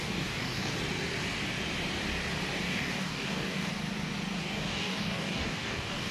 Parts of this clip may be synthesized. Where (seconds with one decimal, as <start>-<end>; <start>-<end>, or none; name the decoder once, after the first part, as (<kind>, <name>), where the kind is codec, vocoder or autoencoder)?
0.0-0.7 (codec, DAC); 2.6-3.7; 4.4-6.1